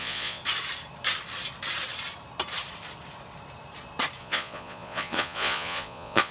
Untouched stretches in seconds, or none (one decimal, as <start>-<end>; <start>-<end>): 0.4-4.2